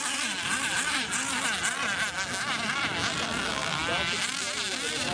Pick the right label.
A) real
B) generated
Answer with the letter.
A